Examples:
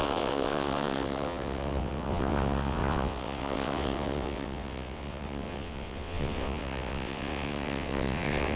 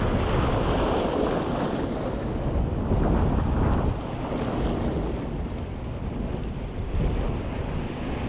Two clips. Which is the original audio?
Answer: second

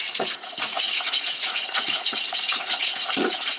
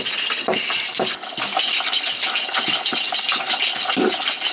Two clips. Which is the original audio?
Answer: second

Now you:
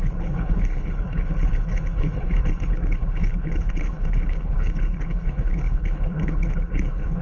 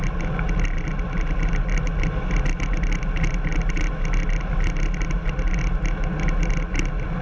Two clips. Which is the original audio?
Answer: second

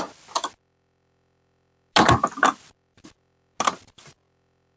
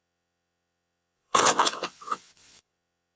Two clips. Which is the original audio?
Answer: first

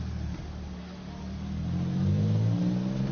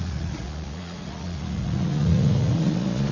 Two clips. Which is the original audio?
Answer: first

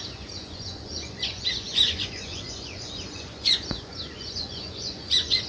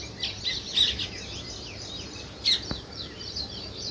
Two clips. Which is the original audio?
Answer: second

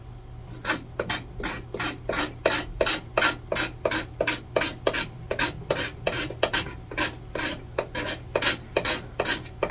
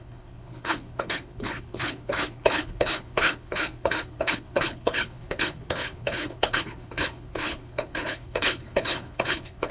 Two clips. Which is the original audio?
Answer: first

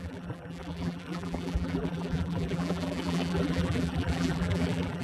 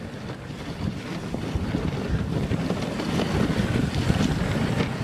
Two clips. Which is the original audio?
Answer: second